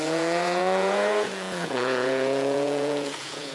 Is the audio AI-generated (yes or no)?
yes